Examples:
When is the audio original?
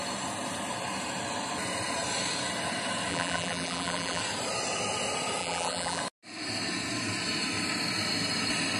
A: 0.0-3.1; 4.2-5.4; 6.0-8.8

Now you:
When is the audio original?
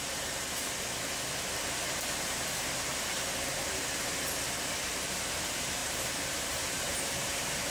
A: 0.4-2.2; 2.9-4.9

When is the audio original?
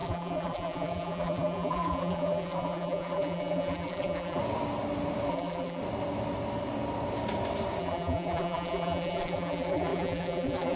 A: 4.4-5.3; 5.8-7.8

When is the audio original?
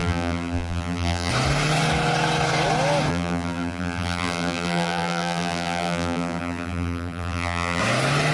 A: 1.3-3.1; 7.8-8.3